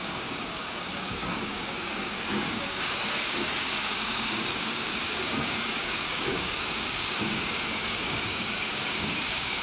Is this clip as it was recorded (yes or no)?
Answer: no